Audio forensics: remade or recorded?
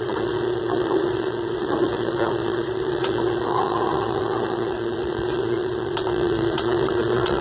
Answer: remade